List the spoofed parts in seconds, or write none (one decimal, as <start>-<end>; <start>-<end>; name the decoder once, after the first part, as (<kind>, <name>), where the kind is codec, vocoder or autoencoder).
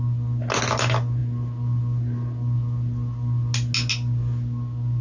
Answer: none